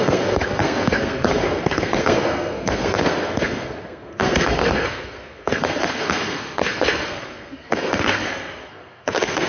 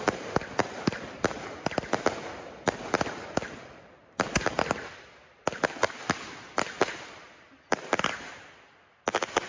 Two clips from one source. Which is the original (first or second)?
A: second